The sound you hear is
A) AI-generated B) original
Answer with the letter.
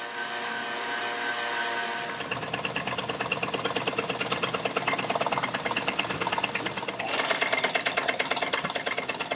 B